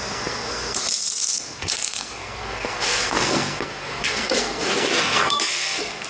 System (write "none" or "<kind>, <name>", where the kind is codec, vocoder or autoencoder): codec, SNAC